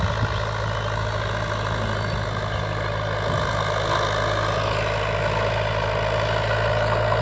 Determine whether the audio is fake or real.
real